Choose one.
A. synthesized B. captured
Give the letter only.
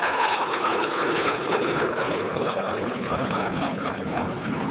A